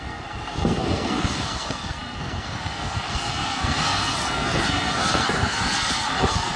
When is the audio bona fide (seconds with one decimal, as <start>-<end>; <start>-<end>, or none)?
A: none